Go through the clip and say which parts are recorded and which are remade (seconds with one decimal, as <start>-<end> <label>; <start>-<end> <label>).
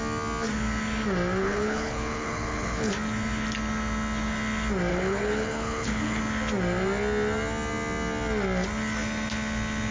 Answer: 0.0-1.4 recorded; 1.4-2.9 remade; 2.9-4.9 recorded; 4.9-6.2 remade; 6.2-9.9 recorded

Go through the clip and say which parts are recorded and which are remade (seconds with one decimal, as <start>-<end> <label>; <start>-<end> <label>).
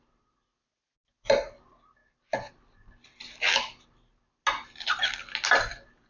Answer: 0.0-6.1 recorded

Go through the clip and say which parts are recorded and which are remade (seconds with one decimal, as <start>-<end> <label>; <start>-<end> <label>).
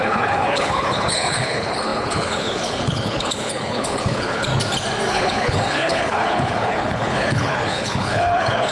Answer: 0.0-4.5 remade; 4.5-5.1 recorded; 5.1-8.7 remade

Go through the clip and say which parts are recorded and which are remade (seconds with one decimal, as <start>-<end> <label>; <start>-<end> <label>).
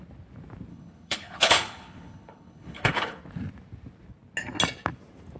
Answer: 0.0-0.7 recorded; 0.7-3.2 remade; 3.2-5.4 recorded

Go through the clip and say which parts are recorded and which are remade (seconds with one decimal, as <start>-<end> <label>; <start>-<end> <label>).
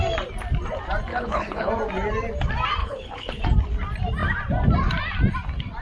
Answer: 0.0-1.1 recorded; 1.1-1.7 remade; 1.7-2.8 recorded; 2.8-3.4 remade; 3.4-5.8 recorded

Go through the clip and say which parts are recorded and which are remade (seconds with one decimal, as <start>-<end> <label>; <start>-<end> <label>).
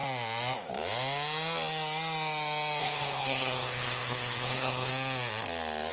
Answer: 0.0-2.8 recorded; 2.8-4.9 remade; 4.9-5.9 recorded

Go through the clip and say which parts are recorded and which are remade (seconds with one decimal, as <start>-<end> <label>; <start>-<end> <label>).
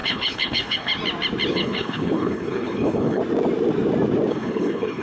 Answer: 0.0-0.9 remade; 0.9-1.5 recorded; 1.5-3.2 remade; 3.2-4.3 recorded; 4.3-5.0 remade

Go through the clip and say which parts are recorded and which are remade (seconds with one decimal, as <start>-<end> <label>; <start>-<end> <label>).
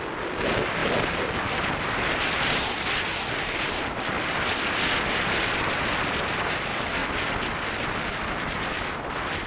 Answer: 0.0-9.5 recorded